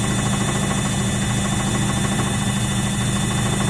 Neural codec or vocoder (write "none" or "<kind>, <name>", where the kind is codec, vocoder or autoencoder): none